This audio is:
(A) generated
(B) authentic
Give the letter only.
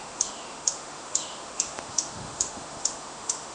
A